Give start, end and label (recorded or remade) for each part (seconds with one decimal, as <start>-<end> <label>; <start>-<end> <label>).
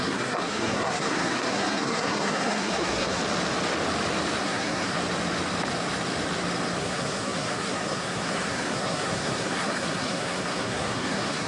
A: 0.0-3.2 remade; 3.2-4.4 recorded; 4.4-5.0 remade; 5.0-6.8 recorded; 6.8-11.5 remade